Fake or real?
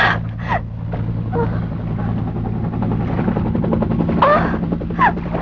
real